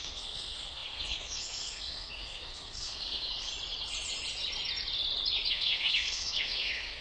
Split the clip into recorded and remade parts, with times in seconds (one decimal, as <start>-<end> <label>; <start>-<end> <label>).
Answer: 0.0-3.5 remade; 3.5-5.5 recorded; 5.5-7.0 remade

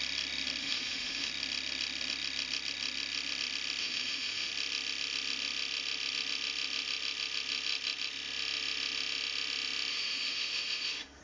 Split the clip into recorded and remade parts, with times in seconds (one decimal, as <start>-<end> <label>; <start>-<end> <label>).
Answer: 0.0-0.6 recorded; 0.6-1.3 remade; 1.3-3.8 recorded; 3.8-4.5 remade; 4.5-9.9 recorded; 9.9-11.2 remade

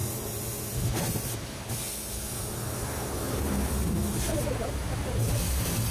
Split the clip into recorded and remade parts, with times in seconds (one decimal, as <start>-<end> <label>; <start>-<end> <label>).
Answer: 0.0-5.9 recorded

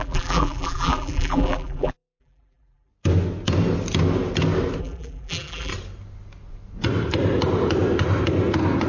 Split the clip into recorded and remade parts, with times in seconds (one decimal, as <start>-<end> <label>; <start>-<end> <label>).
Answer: 0.0-2.9 remade; 2.9-4.8 recorded; 4.8-5.7 remade; 5.7-8.9 recorded

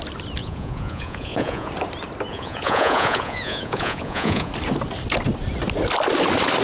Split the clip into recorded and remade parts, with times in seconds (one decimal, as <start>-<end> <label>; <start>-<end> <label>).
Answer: 0.0-0.4 recorded; 0.4-1.7 remade; 1.7-2.3 recorded; 2.3-4.5 remade; 4.5-6.6 recorded

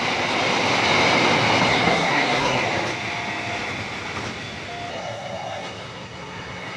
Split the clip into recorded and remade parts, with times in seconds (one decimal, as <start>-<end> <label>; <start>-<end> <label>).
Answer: 0.0-1.7 recorded; 1.7-2.6 remade; 2.6-4.9 recorded; 4.9-6.8 remade

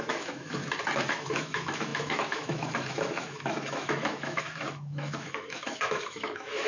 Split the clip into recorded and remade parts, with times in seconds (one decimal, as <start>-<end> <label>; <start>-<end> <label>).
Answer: 0.0-0.6 remade; 0.6-1.1 recorded; 1.1-6.7 remade